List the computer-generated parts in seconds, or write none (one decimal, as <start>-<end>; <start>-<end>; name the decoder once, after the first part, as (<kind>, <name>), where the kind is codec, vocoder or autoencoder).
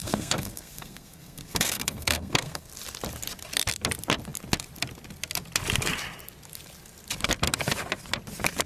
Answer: 0.0-2.7 (codec, SNAC)